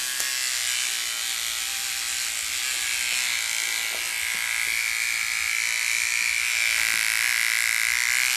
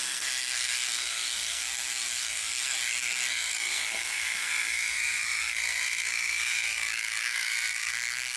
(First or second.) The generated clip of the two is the second